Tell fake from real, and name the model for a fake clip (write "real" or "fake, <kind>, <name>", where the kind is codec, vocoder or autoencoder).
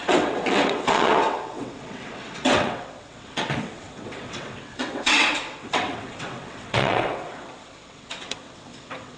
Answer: fake, vocoder, WaveNeXt